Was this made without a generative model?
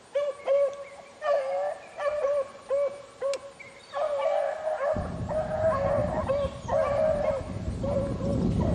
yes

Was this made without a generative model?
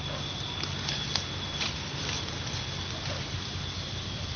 yes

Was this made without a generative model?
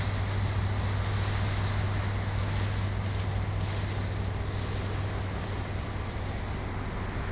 yes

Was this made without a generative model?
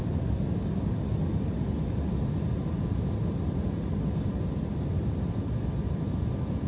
yes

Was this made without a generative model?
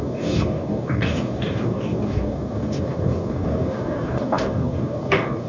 no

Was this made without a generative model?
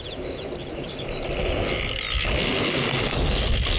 yes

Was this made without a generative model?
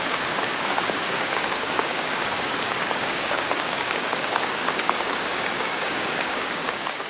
no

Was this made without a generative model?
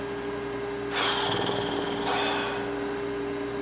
yes